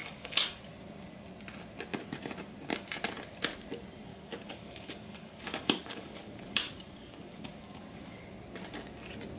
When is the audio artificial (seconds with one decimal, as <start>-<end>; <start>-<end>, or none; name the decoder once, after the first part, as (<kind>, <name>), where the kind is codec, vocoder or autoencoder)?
0.0-0.6 (codec, DAC); 4.1-8.2